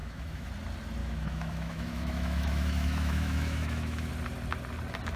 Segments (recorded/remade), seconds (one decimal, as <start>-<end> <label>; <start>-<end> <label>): 0.0-0.5 remade; 0.5-1.0 recorded; 1.0-4.1 remade; 4.1-5.2 recorded